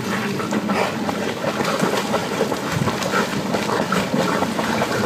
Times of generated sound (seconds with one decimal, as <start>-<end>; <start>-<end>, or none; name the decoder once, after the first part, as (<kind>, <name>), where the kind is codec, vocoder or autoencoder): none